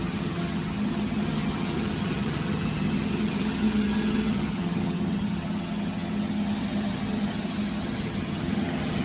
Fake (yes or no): yes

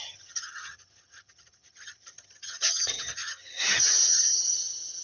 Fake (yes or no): yes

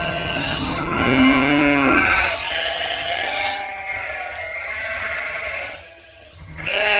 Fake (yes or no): yes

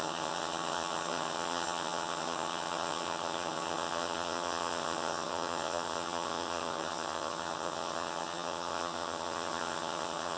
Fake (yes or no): yes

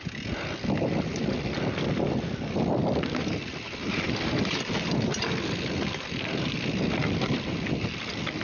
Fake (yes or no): no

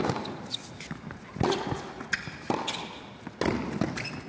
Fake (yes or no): no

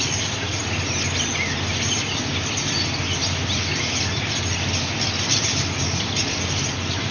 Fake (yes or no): no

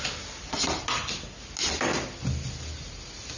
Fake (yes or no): no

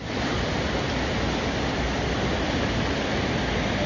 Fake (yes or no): no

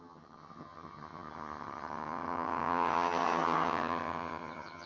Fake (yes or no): yes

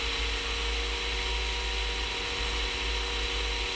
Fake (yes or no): no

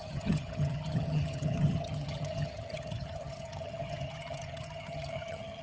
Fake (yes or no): yes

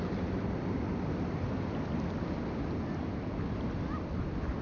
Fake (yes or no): no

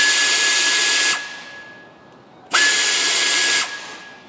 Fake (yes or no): no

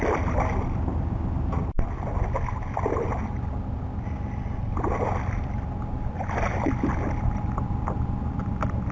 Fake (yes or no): no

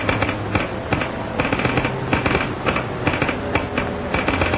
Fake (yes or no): no